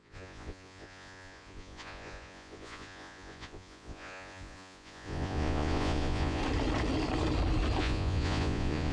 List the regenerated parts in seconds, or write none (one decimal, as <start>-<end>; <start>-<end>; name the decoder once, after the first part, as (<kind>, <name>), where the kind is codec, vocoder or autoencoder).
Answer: 0.0-6.4 (vocoder, Vocos); 7.8-8.9